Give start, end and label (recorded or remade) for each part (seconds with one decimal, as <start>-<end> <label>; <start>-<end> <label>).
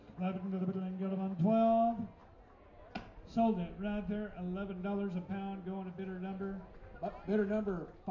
0.0-8.1 recorded